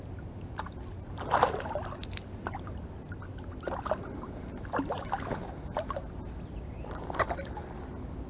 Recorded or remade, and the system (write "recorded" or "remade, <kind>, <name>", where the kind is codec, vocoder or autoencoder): recorded